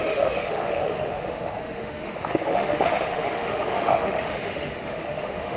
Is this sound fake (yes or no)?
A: yes